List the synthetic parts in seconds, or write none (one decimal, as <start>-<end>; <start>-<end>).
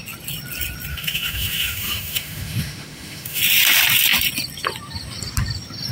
0.9-3.4